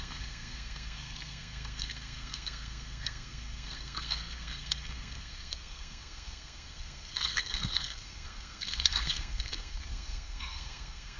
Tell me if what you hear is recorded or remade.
remade